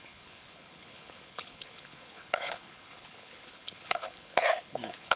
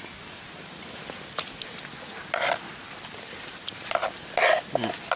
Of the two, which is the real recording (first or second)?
second